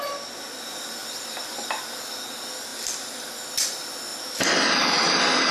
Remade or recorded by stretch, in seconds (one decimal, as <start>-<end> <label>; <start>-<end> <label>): 0.0-1.0 recorded; 1.0-1.8 remade; 1.8-2.7 recorded; 2.7-3.3 remade; 3.3-5.5 recorded